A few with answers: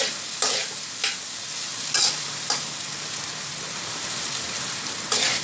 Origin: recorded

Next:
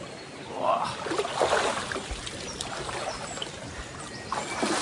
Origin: recorded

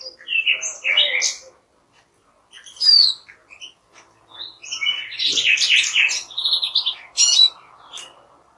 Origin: recorded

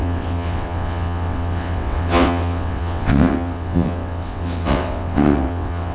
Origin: remade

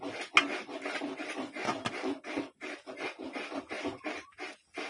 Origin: recorded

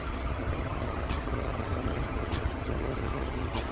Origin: remade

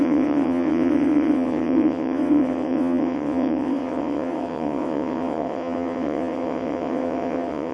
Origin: remade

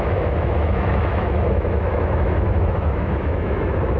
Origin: remade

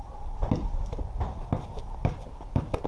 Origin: recorded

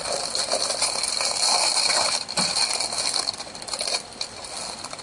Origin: recorded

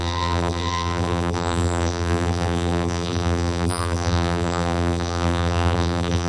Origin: remade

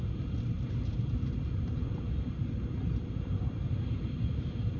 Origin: recorded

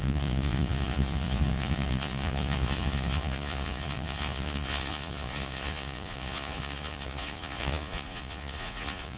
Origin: remade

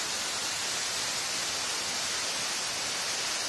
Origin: recorded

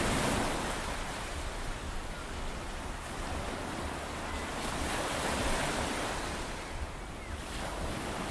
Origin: recorded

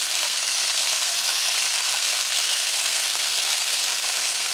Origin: remade